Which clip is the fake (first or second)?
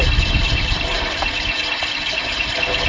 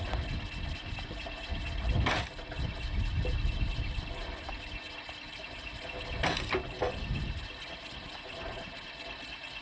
first